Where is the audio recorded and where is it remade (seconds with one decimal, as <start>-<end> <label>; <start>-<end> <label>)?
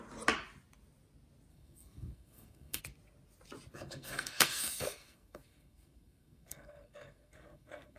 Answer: 0.0-1.5 recorded; 1.5-2.8 remade; 2.8-3.7 recorded; 3.7-8.0 remade